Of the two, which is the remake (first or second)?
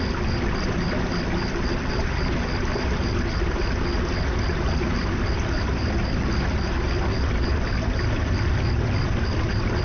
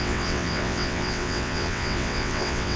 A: second